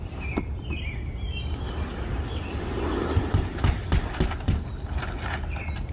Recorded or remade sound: recorded